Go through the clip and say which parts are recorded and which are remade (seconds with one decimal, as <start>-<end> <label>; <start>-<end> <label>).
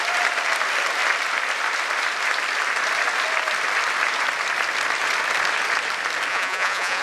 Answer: 0.0-6.3 recorded; 6.3-7.0 remade